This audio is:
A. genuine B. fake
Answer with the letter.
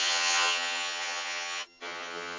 B